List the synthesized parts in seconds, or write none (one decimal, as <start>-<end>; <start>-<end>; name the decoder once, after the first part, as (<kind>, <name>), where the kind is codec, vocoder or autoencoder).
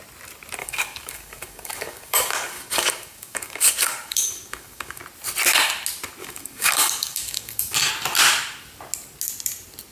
0.6-5.0 (codec, DAC); 6.2-7.9